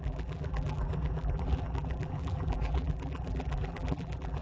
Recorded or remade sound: remade